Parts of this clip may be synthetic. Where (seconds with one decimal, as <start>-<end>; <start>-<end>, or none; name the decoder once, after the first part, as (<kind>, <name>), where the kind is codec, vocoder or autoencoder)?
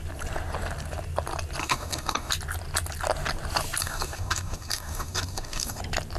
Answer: 1.6-2.3 (codec, DAC); 3.8-5.8